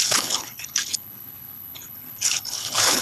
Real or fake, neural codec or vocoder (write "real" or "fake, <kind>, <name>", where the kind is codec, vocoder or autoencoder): fake, codec, HILCodec